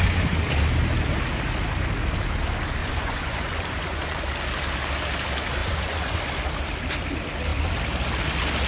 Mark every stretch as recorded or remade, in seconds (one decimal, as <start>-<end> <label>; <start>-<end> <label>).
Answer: 0.0-2.8 recorded; 2.8-4.2 remade; 4.2-5.6 recorded; 5.6-6.2 remade; 6.2-8.7 recorded